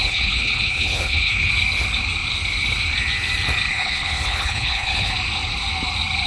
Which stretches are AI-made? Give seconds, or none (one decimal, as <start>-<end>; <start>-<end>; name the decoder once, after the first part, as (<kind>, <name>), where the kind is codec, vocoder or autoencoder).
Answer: 0.0-1.5 (codec, HILCodec); 3.7-5.1